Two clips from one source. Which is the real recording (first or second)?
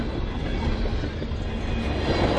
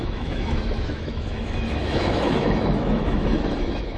first